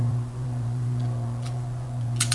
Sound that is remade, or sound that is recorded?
remade